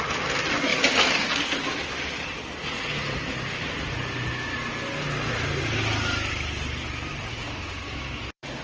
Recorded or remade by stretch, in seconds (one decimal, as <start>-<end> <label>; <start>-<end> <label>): 0.0-7.3 recorded; 7.3-8.2 remade; 8.2-8.6 recorded